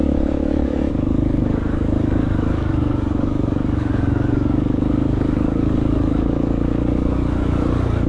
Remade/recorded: remade